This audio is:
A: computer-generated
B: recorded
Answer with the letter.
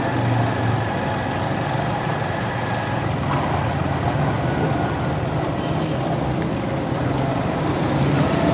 B